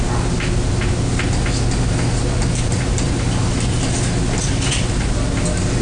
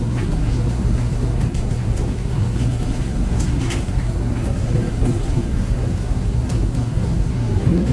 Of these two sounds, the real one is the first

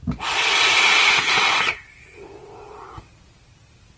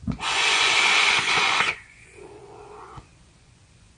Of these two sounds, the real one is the first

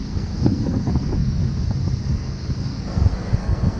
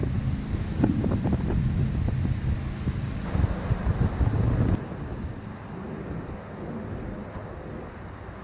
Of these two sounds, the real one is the second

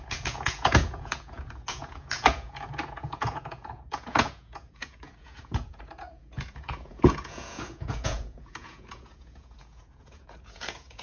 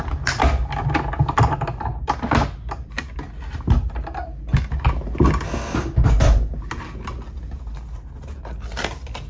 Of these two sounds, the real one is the second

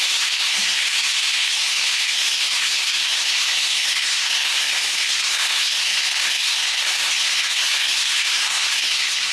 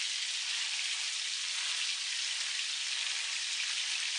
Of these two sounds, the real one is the second